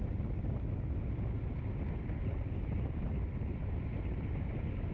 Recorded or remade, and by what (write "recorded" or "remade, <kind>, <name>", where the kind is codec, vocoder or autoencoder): recorded